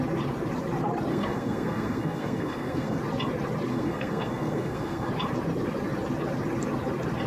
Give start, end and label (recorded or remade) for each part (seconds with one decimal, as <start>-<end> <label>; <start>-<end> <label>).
0.0-1.1 recorded; 1.1-3.0 remade; 3.0-3.7 recorded; 3.7-5.1 remade; 5.1-7.3 recorded